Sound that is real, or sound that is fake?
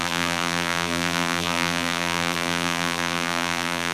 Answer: fake